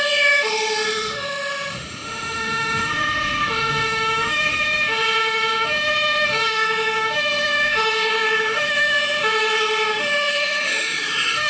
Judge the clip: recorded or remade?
remade